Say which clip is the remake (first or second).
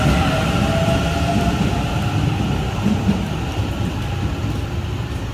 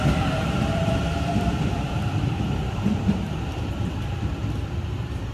second